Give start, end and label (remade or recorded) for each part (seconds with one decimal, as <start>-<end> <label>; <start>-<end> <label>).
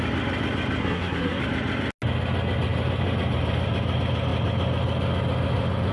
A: 0.0-0.8 recorded; 0.8-1.4 remade; 1.4-5.9 recorded